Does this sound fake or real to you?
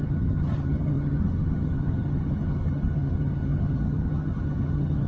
fake